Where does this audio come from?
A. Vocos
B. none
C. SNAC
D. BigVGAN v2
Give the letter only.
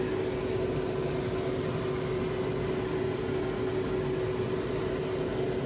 B